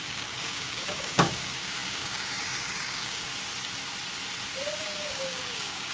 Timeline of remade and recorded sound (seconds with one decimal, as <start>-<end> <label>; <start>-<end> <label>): 0.0-3.3 remade; 3.3-4.8 recorded; 4.8-5.9 remade